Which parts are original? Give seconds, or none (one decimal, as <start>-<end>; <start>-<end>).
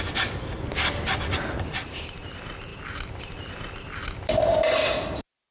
0.0-5.5